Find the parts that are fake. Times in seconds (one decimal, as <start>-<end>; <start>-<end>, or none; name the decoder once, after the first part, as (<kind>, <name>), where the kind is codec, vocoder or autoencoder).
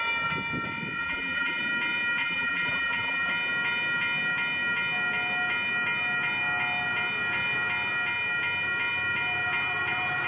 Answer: 1.0-1.6 (vocoder, BigVGAN v2); 2.2-3.3